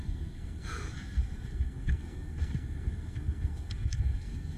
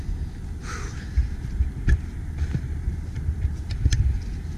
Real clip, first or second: second